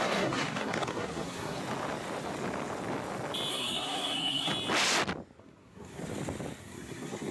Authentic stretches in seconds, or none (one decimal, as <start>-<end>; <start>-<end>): 1.6-3.5; 4.5-5.4; 6.0-6.6